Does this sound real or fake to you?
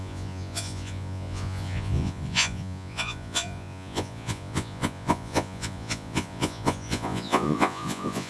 fake